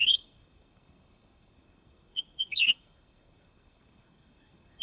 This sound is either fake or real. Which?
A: fake